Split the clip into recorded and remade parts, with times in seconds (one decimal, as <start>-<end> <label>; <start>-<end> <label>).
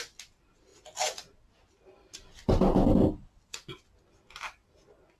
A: 0.0-5.2 recorded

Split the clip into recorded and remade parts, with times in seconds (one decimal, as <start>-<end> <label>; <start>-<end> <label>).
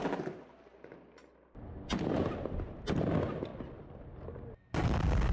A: 0.0-3.5 recorded; 3.5-4.1 remade; 4.1-5.3 recorded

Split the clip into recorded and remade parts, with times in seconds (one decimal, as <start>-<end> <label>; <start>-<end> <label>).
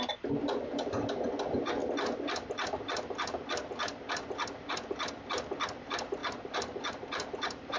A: 0.0-7.8 recorded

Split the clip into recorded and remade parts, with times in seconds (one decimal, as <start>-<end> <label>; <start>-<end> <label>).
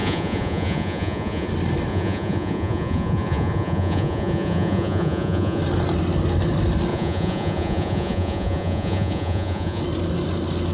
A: 0.0-1.5 remade; 1.5-1.9 recorded; 1.9-5.6 remade; 5.6-6.9 recorded; 6.9-9.8 remade; 9.8-10.7 recorded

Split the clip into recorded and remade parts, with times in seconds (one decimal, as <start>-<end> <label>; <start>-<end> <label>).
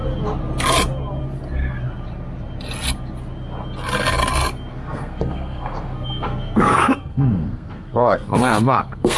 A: 0.0-4.7 recorded; 4.7-9.2 remade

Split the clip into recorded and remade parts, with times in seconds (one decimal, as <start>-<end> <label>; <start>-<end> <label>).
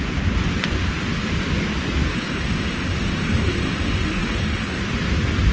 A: 0.0-2.1 recorded; 2.1-4.8 remade; 4.8-5.5 recorded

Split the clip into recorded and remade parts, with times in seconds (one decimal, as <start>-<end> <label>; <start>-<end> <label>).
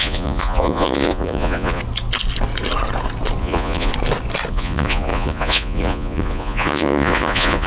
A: 0.0-1.8 remade; 1.8-3.4 recorded; 3.4-3.9 remade; 3.9-4.5 recorded; 4.5-7.7 remade